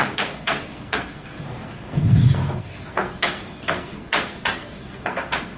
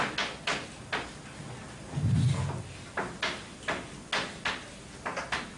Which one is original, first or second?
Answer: second